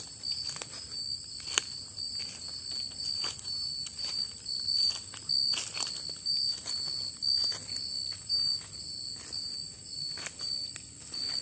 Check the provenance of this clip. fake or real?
real